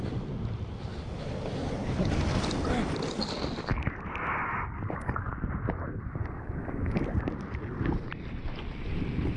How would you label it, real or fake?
real